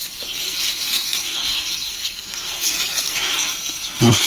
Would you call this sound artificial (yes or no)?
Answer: yes